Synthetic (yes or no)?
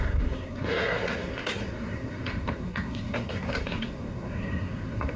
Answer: yes